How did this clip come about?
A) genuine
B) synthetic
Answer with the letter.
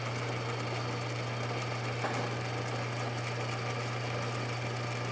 A